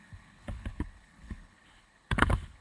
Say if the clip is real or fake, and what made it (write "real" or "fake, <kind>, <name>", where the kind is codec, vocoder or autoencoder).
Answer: fake, codec, HILCodec